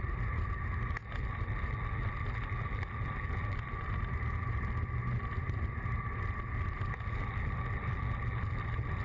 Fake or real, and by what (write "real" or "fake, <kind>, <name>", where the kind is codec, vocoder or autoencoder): real